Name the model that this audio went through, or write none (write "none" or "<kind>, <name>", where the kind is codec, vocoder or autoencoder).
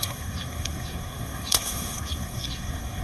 codec, SNAC